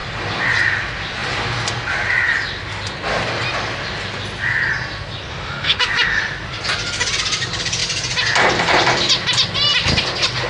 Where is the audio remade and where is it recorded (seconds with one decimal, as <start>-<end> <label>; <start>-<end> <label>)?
0.0-5.3 recorded; 5.3-6.2 remade; 6.2-10.5 recorded